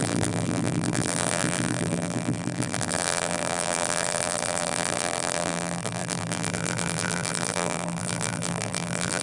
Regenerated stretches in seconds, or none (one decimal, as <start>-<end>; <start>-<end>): 0.0-9.2